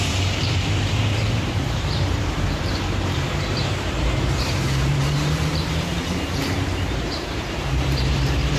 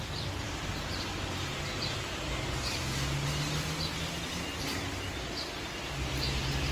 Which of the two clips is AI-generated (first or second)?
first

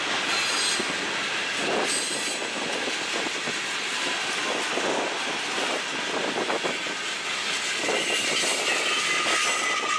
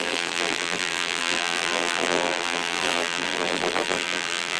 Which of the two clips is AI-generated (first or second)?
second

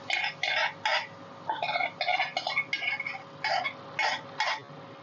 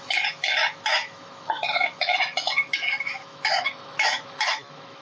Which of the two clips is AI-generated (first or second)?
second